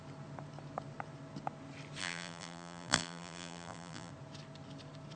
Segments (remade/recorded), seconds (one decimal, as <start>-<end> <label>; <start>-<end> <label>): 0.0-2.0 recorded; 2.0-4.1 remade; 4.1-5.2 recorded